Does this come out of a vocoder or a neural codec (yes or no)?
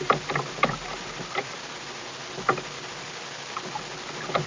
no